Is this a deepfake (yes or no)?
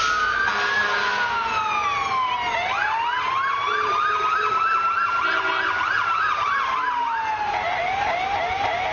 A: no